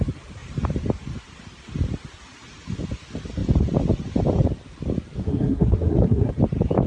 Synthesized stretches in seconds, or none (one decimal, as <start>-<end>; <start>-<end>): 5.2-6.3